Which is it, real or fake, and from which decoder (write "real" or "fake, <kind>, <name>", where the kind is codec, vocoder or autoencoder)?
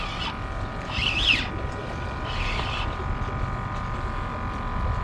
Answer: real